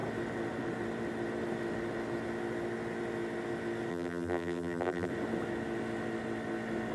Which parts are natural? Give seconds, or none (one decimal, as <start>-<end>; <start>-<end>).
0.0-3.9; 5.1-6.9